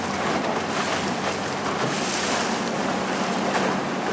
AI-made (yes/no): no